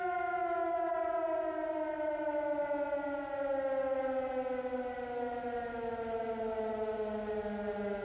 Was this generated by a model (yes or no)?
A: no